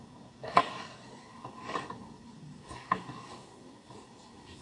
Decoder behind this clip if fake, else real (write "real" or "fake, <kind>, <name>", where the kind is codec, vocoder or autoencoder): fake, codec, DAC